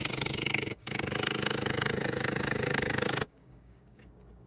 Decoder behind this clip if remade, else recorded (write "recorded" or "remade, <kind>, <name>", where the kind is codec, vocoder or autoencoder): remade, codec, DAC